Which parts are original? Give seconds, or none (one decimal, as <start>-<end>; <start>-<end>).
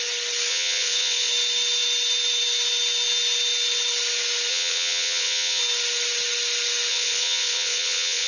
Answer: 0.0-0.5; 1.3-4.5; 5.6-6.9